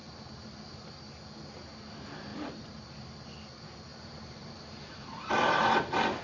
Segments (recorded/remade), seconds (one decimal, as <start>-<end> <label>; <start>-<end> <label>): 0.0-2.3 recorded; 2.3-2.9 remade; 2.9-3.9 recorded; 3.9-5.6 remade; 5.6-6.2 recorded